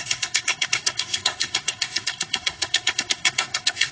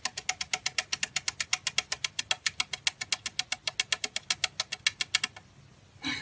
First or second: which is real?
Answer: second